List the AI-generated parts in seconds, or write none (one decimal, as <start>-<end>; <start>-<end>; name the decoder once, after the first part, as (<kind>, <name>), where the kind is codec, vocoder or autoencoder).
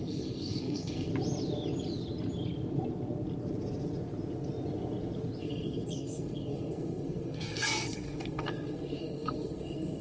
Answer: 0.0-1.1 (codec, SNAC); 5.4-10.0